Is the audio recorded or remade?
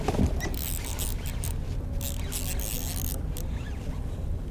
recorded